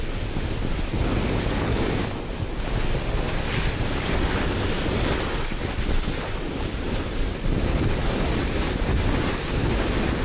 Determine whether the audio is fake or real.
real